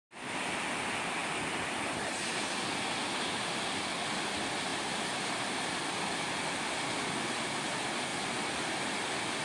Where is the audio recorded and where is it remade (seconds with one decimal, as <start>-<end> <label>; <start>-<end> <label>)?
0.0-9.4 recorded